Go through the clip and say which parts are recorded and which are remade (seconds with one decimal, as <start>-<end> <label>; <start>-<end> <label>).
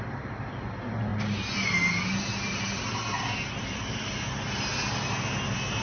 0.0-5.8 recorded